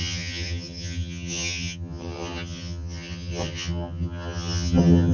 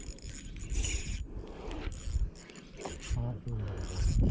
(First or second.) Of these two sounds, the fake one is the first